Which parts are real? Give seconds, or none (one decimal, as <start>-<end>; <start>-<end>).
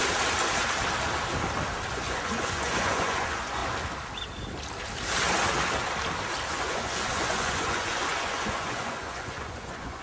0.0-1.9; 3.6-6.5